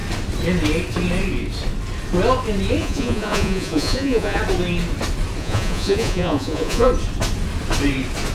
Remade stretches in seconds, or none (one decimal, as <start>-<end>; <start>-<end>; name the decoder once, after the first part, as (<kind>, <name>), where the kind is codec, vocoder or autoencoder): 2.8-4.4 (vocoder, Vocos); 5.4-6.9